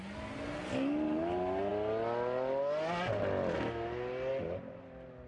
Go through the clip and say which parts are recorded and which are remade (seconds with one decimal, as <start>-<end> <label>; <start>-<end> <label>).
0.0-5.3 recorded